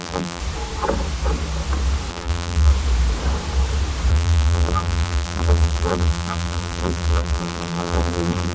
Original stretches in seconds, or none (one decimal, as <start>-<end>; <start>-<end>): 0.4-2.1; 2.7-4.1